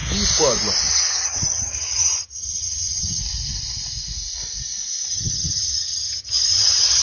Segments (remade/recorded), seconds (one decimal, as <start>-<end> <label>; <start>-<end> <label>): 0.0-0.8 recorded; 0.8-3.2 remade; 3.2-5.1 recorded; 5.1-7.0 remade